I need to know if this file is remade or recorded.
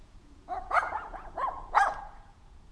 remade